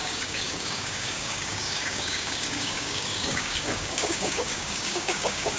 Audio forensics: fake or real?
fake